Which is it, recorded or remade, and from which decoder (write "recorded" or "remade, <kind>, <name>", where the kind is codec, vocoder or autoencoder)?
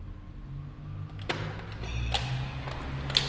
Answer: recorded